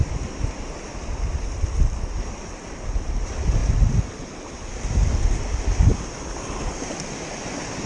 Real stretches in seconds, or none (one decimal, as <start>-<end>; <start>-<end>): 2.4-3.6; 4.7-5.9; 6.6-7.9